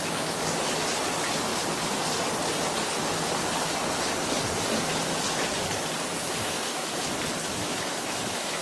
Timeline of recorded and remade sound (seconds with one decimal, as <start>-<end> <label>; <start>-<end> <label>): 0.0-6.1 recorded; 6.1-6.9 remade; 6.9-7.4 recorded; 7.4-8.6 remade